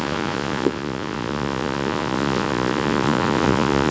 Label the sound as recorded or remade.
remade